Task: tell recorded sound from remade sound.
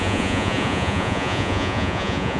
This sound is remade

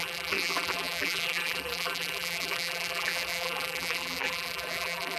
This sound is remade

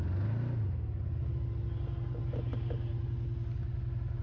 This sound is recorded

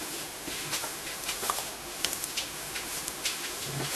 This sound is remade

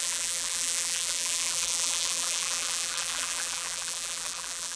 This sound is remade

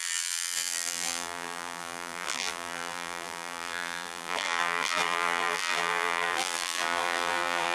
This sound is remade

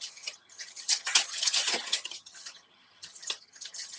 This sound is remade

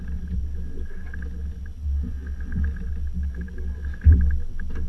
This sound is recorded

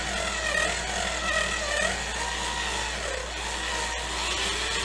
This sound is recorded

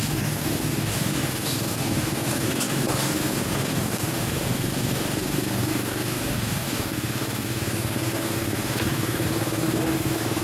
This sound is remade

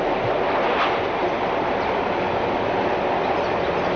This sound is recorded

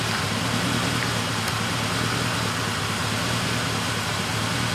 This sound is remade